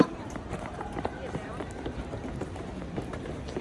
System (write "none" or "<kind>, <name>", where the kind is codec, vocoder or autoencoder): vocoder, BigVGAN v2